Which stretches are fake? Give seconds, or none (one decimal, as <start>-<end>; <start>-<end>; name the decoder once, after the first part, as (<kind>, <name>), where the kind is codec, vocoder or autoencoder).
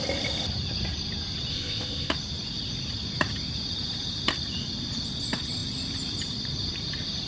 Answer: 1.5-2.1 (codec, ZipCodec)